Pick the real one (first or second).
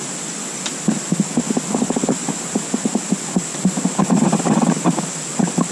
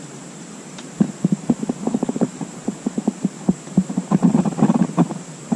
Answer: first